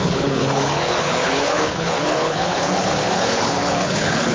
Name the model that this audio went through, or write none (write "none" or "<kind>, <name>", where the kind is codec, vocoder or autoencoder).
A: codec, HILCodec